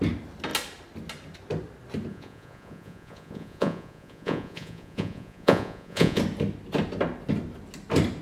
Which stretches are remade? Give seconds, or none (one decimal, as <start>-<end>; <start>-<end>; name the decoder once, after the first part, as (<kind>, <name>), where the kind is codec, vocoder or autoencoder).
2.1-6.2 (vocoder, Vocos)